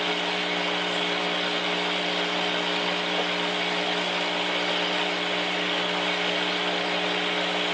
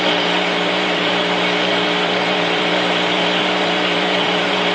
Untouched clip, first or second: first